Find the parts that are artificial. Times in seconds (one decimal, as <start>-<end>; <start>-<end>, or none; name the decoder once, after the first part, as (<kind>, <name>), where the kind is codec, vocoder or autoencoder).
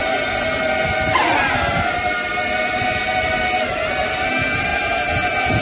0.0-0.9 (vocoder, BigVGAN v2)